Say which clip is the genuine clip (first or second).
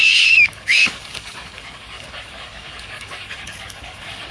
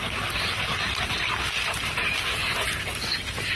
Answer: second